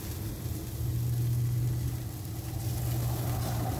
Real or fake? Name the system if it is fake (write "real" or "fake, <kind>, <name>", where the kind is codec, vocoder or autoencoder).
real